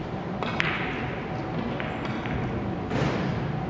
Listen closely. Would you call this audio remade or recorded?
recorded